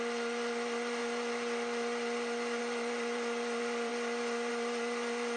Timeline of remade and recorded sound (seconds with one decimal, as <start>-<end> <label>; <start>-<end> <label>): 0.0-1.0 remade; 1.0-2.6 recorded; 2.6-3.9 remade; 3.9-4.5 recorded; 4.5-5.4 remade

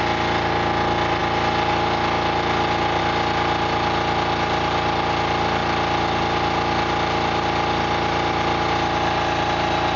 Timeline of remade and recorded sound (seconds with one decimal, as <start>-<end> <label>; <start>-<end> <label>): 0.0-10.0 recorded

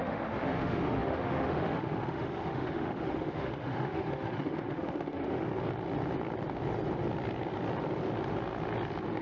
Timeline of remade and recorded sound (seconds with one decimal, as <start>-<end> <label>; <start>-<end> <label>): 0.0-5.5 remade; 5.5-9.2 recorded

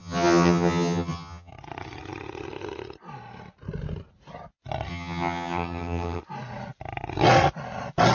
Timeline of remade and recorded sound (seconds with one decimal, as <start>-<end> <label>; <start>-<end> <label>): 0.0-1.5 remade; 1.5-4.9 recorded; 4.9-6.2 remade; 6.2-8.1 recorded

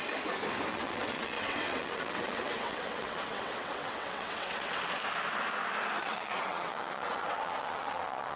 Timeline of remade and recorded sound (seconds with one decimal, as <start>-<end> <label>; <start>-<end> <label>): 0.0-0.7 recorded; 0.7-4.9 remade; 4.9-6.0 recorded; 6.0-8.4 remade

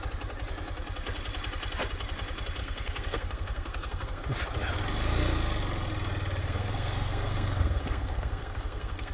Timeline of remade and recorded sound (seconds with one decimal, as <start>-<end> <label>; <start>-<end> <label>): 0.0-2.6 recorded; 2.6-4.2 remade; 4.2-6.4 recorded; 6.4-9.1 remade